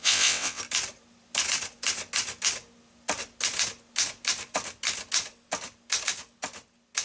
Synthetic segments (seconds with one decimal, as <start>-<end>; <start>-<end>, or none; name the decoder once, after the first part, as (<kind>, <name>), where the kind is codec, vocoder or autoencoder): 0.0-0.6 (vocoder, WaveNeXt)